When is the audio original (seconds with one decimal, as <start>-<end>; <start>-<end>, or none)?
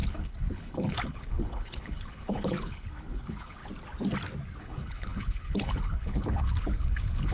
3.6-4.6